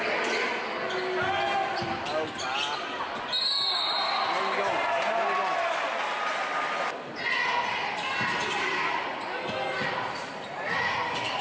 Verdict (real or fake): real